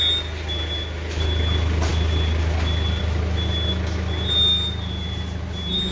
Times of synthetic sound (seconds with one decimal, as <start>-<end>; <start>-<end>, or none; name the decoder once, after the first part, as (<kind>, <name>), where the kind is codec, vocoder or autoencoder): none